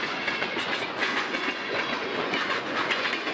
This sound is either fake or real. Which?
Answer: fake